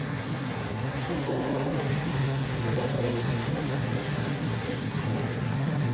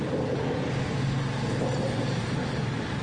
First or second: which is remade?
first